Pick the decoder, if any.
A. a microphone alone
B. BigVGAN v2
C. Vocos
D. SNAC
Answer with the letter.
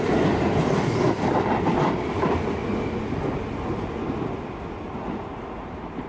A